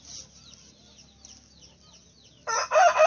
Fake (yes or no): no